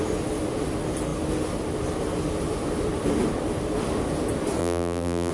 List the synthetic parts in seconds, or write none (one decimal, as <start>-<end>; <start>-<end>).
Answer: 4.6-5.3